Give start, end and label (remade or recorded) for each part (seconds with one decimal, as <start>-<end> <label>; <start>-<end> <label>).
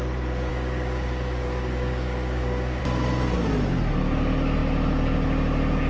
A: 0.0-0.5 recorded; 0.5-2.8 remade; 2.8-5.9 recorded